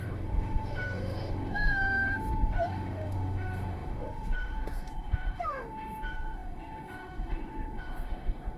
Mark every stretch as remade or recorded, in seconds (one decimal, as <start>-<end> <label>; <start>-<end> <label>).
0.0-8.6 remade

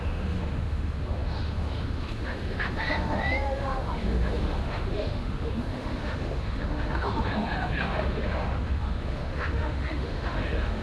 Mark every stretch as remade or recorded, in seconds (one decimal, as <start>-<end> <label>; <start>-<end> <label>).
0.0-10.8 remade

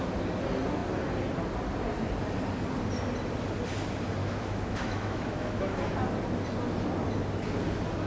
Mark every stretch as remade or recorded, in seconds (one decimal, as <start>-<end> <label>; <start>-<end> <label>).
0.0-4.2 recorded; 4.2-5.9 remade; 5.9-8.1 recorded